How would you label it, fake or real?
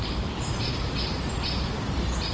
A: real